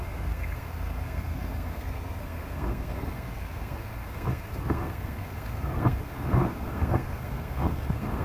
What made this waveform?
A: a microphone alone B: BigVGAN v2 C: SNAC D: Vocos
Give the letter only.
C